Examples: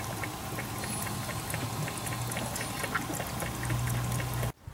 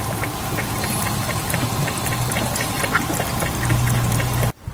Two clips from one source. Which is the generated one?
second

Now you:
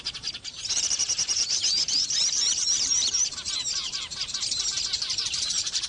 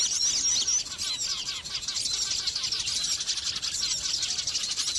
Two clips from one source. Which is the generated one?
first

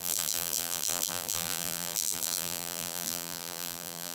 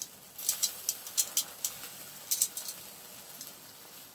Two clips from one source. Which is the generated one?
first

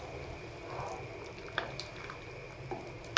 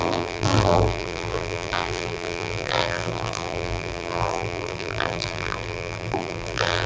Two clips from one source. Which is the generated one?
second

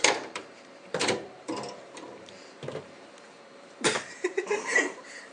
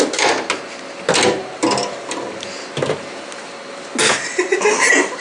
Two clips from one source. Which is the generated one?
first